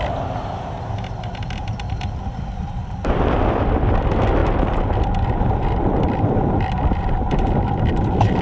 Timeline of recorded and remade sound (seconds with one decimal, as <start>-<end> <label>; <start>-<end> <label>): 0.0-4.4 remade; 4.4-5.0 recorded; 5.0-8.4 remade